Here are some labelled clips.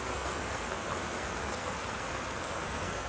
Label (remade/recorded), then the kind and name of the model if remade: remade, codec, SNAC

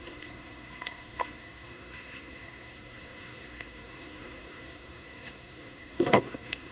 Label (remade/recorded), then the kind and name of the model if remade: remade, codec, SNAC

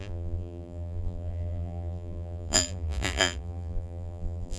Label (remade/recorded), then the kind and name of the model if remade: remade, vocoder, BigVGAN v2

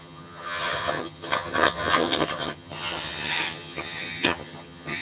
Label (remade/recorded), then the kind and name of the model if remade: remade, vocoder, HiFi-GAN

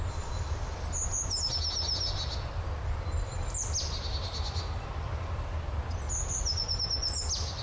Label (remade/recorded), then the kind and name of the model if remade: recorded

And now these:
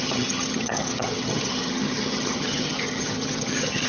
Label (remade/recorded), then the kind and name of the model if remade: remade, vocoder, HiFi-GAN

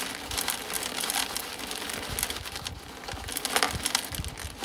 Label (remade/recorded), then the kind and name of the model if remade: recorded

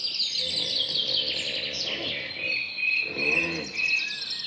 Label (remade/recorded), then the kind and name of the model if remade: recorded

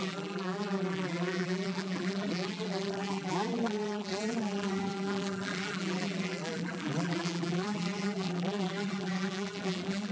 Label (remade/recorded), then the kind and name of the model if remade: remade, vocoder, BigVGAN v2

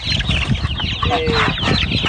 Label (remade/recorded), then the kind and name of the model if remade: recorded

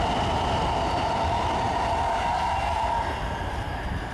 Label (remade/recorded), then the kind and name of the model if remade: recorded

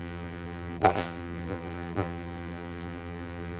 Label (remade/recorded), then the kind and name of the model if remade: remade, vocoder, BigVGAN v2